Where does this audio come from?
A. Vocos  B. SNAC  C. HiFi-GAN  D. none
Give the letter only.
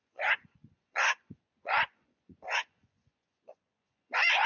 A